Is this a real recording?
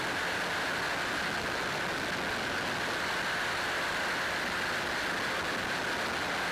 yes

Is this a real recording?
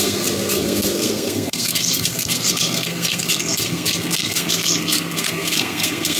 no